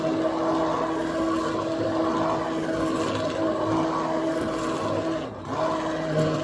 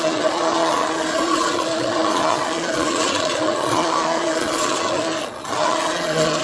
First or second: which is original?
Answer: first